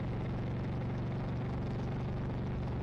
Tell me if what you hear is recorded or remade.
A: recorded